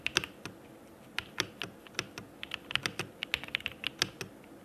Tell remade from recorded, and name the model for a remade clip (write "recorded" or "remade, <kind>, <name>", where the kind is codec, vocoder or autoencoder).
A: recorded